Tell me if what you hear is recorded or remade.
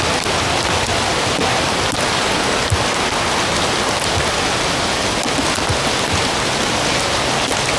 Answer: recorded